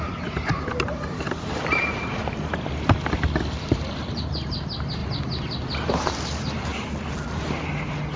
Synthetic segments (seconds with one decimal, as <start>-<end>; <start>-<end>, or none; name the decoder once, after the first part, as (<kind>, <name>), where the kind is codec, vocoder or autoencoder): 0.0-2.2 (vocoder, BigVGAN v2); 3.6-5.0; 5.9-6.7